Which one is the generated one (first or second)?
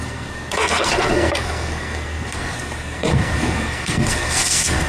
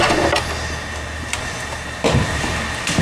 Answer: first